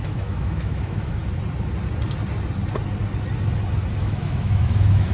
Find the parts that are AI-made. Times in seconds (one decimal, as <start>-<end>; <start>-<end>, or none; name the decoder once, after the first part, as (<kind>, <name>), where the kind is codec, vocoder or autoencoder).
0.0-1.2 (autoencoder, DAC-VAE); 4.0-5.1